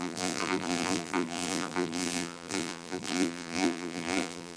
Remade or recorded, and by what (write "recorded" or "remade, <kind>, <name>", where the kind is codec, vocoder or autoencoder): remade, vocoder, BigVGAN v2